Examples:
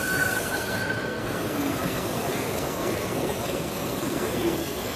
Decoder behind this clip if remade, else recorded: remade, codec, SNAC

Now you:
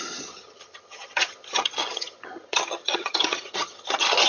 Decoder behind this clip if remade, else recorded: remade, vocoder, HiFi-GAN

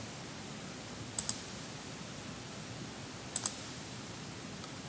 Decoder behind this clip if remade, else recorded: recorded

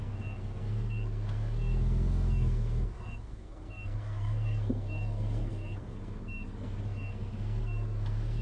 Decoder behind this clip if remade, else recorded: remade, codec, SNAC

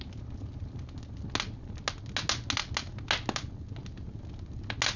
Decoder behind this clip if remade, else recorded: recorded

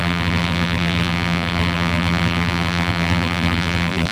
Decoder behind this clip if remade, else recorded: remade, vocoder, BigVGAN v2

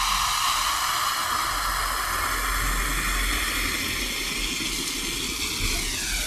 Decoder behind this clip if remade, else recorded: recorded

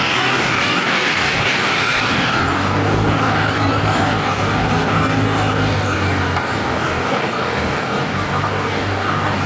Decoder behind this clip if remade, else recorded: remade, codec, DAC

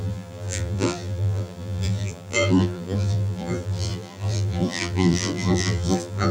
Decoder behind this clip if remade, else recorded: remade, vocoder, BigVGAN v2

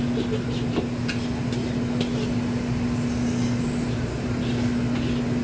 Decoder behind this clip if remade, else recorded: recorded